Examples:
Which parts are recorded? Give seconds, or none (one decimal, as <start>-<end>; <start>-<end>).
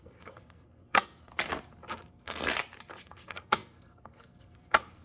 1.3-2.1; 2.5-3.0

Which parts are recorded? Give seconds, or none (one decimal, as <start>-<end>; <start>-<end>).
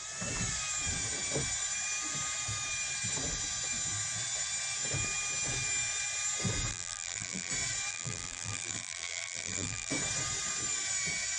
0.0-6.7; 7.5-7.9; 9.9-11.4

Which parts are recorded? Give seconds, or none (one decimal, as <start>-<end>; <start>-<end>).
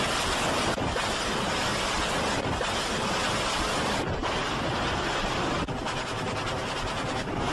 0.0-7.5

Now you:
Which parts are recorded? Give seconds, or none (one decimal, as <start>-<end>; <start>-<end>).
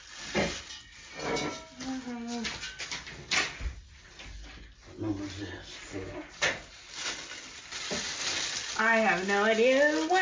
0.0-10.2